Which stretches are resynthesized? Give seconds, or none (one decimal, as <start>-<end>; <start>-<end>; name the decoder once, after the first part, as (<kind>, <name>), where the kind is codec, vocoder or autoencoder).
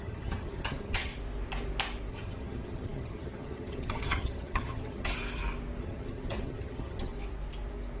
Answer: 0.0-1.1 (vocoder, HiFi-GAN); 2.1-5.1; 5.8-7.1